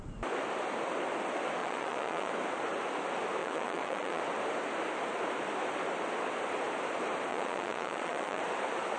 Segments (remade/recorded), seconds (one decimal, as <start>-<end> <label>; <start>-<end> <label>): 0.0-1.6 recorded; 1.6-2.3 remade; 2.3-3.4 recorded; 3.4-4.2 remade; 4.2-7.3 recorded; 7.3-8.4 remade; 8.4-9.0 recorded